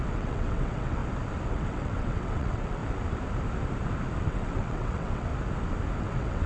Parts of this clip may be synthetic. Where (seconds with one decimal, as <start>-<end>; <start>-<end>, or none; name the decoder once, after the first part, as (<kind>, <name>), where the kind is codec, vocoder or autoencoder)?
0.0-1.0 (vocoder, WaveNeXt); 1.5-2.8; 4.2-5.3; 6.0-6.5